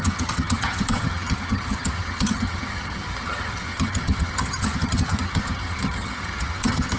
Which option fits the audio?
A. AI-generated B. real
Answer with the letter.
A